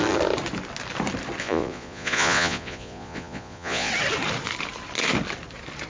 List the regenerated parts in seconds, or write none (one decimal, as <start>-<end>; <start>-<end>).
1.4-3.9